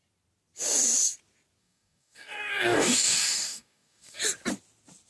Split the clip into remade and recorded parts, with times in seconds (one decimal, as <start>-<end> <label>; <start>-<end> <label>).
0.0-1.6 recorded; 1.6-4.2 remade; 4.2-5.1 recorded